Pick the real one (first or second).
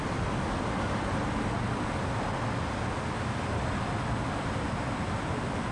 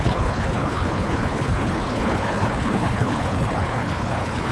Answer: first